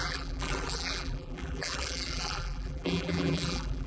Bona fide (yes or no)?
no